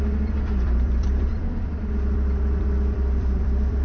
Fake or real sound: fake